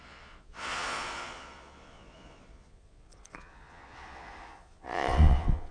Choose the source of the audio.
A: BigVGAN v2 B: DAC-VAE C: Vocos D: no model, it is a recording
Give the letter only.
C